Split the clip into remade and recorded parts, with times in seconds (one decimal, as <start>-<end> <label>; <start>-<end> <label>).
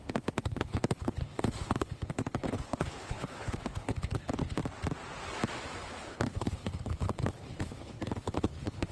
0.0-4.6 remade; 4.6-6.0 recorded; 6.0-8.9 remade